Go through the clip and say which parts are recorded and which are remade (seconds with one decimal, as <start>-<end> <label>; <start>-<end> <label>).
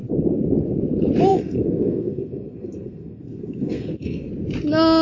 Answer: 0.0-1.3 recorded; 1.3-4.3 remade; 4.3-5.0 recorded